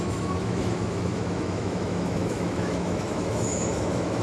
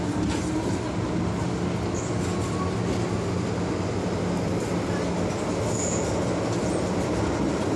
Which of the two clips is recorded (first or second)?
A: second